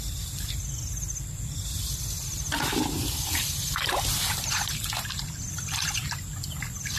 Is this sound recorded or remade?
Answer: remade